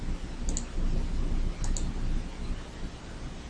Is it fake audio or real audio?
real